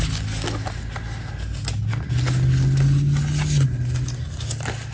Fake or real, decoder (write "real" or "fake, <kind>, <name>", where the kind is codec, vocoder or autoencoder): real